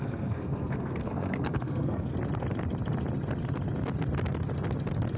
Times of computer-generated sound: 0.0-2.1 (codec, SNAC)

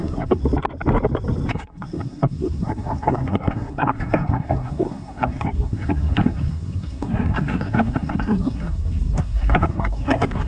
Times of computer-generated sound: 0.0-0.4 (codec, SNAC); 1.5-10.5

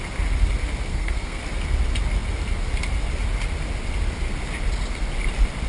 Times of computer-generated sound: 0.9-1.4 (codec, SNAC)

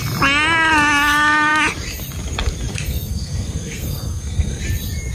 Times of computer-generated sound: 2.7-4.6 (codec, SNAC)